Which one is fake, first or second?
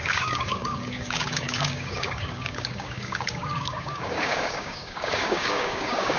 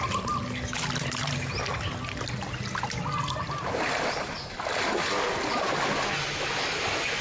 first